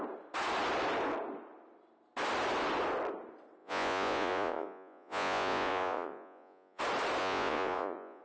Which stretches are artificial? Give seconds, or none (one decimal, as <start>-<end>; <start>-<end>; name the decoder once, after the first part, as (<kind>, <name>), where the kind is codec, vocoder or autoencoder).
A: 3.6-6.8 (vocoder, Vocos); 7.2-8.2